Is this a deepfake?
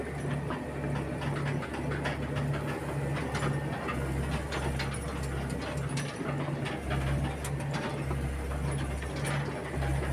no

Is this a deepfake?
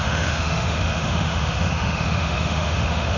yes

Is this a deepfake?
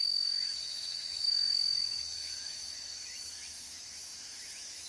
yes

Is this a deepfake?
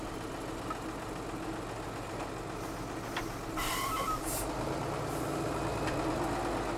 no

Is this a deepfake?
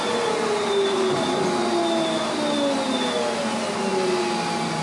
no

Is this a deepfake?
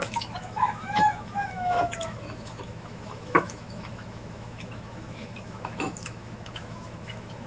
yes